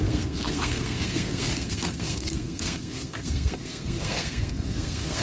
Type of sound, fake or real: fake